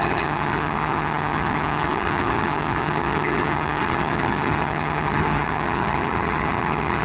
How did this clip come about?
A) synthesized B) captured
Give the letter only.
A